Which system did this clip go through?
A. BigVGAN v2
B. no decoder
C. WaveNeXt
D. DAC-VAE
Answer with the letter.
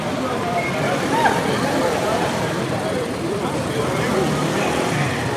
A